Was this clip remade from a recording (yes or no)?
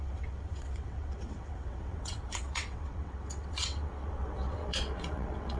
yes